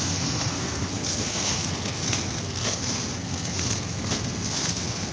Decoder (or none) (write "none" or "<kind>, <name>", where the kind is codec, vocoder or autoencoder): codec, SNAC